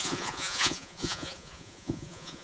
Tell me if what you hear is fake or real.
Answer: fake